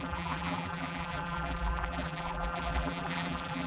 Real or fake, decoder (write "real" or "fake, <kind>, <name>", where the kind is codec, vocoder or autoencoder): fake, vocoder, BigVGAN v2